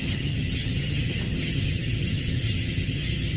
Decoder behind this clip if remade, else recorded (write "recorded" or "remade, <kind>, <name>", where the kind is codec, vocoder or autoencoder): remade, vocoder, HiFi-GAN